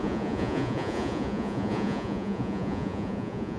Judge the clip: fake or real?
fake